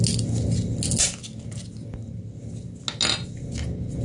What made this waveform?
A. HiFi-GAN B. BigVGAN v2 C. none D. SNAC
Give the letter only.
C